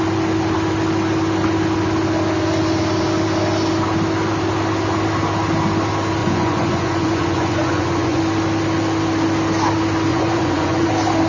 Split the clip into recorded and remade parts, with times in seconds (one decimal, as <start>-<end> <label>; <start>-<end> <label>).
0.0-6.2 recorded; 6.2-8.2 remade; 8.2-10.1 recorded; 10.1-10.9 remade; 10.9-11.3 recorded